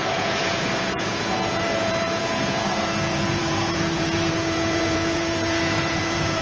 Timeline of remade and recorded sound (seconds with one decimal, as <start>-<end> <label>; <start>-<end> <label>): 0.0-6.4 remade